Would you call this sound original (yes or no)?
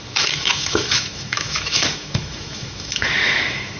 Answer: no